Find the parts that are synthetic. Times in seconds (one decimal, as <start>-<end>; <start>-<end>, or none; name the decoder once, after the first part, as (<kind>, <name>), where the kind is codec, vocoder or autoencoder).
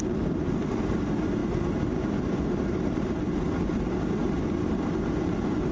none